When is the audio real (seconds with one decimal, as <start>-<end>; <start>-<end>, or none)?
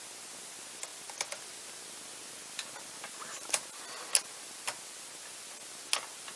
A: 0.0-6.4